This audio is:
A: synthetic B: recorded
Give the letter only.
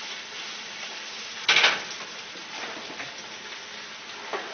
B